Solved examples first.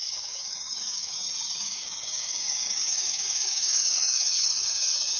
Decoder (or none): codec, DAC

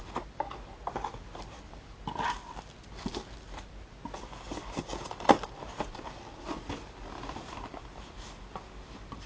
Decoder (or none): none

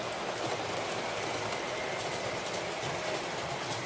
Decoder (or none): none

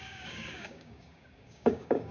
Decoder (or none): codec, DAC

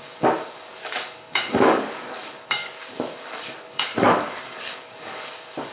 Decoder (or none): codec, DAC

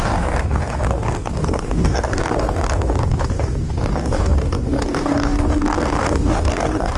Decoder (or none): codec, DAC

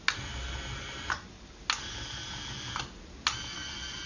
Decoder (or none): none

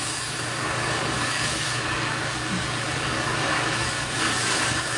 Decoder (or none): codec, DAC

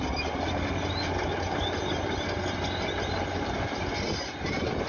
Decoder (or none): none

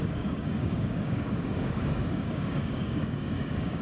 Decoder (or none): codec, DAC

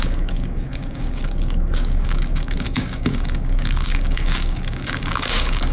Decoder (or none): codec, DAC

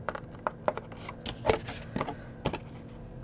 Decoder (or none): none